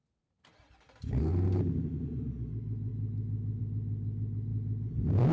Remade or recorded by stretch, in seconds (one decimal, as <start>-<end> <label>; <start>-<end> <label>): 0.0-1.6 remade; 1.6-4.5 recorded; 4.5-5.3 remade

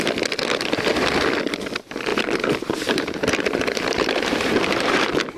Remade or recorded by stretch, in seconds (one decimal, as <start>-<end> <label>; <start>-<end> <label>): 0.0-2.1 recorded; 2.1-5.4 remade